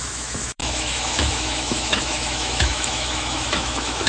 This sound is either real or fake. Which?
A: fake